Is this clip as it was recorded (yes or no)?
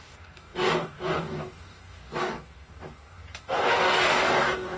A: no